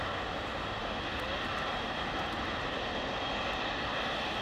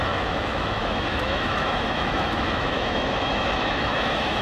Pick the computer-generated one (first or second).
second